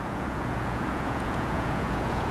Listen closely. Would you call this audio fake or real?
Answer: fake